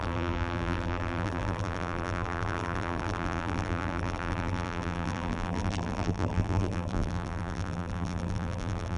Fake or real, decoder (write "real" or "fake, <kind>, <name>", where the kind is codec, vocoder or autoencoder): fake, vocoder, BigVGAN v2